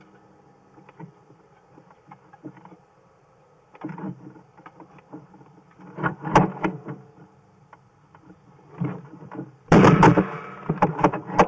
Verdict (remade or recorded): remade